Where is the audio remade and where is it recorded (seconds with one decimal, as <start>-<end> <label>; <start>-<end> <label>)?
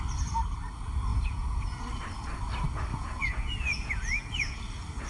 0.0-1.1 recorded; 1.1-1.8 remade; 1.8-2.9 recorded; 2.9-4.6 remade; 4.6-5.1 recorded